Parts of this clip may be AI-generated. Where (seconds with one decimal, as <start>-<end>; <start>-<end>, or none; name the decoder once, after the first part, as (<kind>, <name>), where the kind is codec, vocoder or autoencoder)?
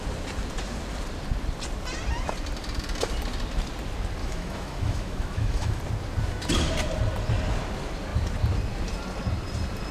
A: 4.2-5.8 (autoencoder, DAC-VAE)